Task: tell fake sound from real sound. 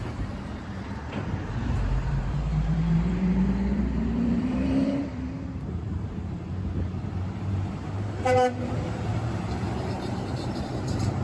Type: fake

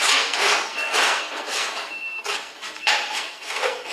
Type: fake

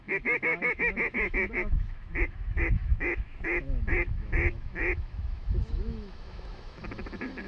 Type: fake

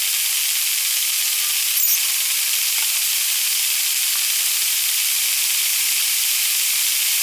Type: real